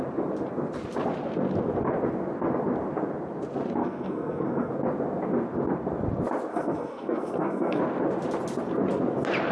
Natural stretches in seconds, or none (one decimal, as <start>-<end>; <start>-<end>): 0.0-3.8; 4.7-6.5; 7.8-9.5